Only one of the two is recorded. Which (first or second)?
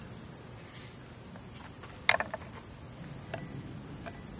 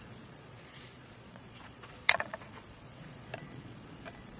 first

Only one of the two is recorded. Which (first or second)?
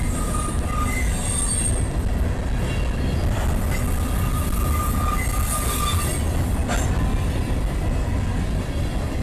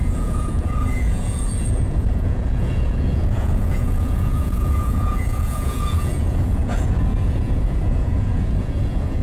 first